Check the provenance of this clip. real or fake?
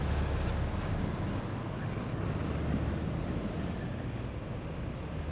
real